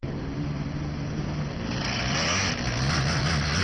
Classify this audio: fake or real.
real